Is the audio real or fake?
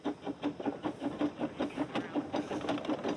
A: real